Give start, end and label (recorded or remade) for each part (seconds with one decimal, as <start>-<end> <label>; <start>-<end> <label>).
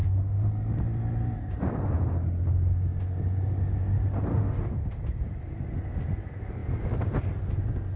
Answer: 0.0-0.5 remade; 0.5-4.3 recorded; 4.3-5.0 remade; 5.0-8.0 recorded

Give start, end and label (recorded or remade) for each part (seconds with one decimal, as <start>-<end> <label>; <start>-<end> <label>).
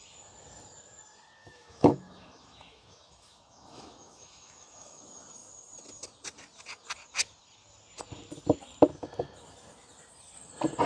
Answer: 0.0-1.4 recorded; 1.4-5.0 remade; 5.0-10.9 recorded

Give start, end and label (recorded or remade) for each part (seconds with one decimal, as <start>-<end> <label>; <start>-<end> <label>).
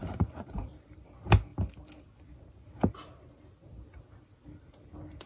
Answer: 0.0-0.6 remade; 0.6-5.3 recorded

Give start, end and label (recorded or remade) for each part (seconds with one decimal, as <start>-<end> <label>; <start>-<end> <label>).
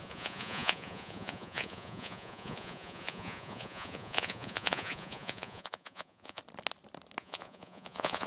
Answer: 0.0-6.4 remade; 6.4-7.2 recorded; 7.2-8.3 remade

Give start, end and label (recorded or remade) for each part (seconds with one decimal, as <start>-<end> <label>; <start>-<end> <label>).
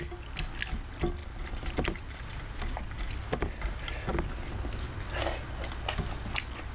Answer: 0.0-6.7 recorded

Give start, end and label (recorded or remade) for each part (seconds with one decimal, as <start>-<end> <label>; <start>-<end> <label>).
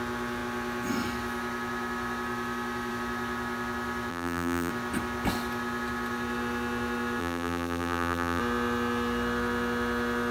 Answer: 0.0-4.1 recorded; 4.1-4.7 remade; 4.7-7.2 recorded; 7.2-8.4 remade; 8.4-10.3 recorded